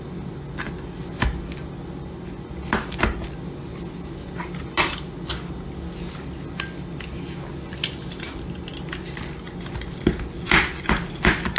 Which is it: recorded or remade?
recorded